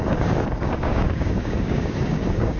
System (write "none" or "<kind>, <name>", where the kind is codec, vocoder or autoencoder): codec, DAC